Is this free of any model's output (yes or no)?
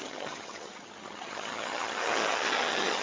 no